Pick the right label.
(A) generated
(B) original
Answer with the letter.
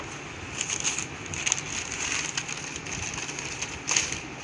B